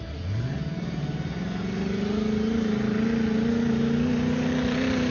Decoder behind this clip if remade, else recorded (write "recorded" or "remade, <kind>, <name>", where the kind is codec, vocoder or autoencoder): recorded